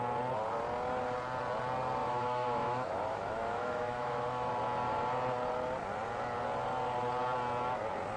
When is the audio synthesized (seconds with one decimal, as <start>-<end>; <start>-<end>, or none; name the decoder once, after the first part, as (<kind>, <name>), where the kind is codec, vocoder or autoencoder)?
2.0-4.5 (autoencoder, DAC-VAE)